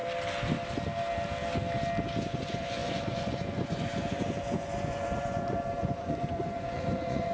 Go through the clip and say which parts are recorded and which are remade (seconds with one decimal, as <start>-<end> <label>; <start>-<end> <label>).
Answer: 0.0-2.2 recorded; 2.2-7.3 remade